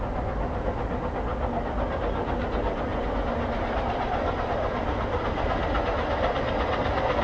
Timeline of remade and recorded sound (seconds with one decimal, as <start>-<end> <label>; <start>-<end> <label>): 0.0-7.2 recorded